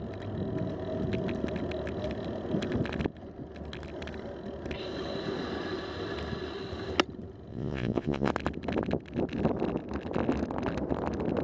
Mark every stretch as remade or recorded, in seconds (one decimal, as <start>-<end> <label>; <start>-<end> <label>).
0.0-7.5 recorded; 7.5-8.3 remade; 8.3-11.4 recorded